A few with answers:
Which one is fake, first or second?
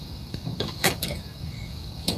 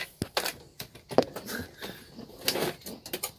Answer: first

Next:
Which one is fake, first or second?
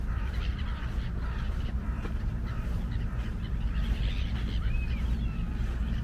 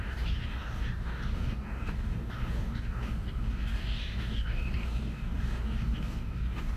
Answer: second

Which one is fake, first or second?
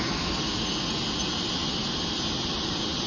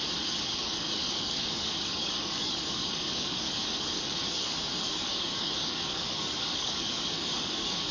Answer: second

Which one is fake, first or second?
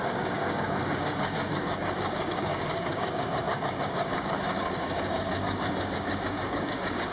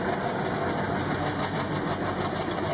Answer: first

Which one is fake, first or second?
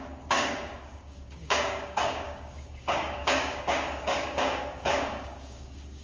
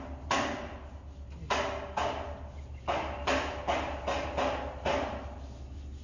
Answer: first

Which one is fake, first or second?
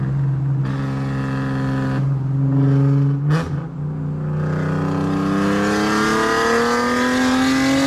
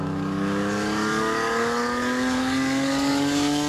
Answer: second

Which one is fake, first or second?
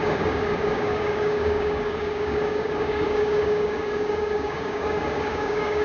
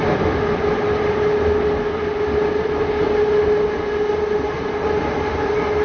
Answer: first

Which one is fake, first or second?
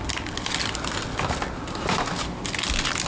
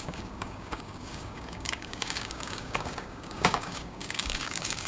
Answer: second